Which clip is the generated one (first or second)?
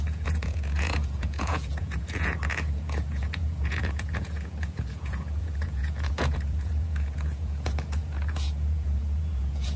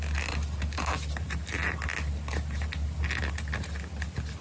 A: first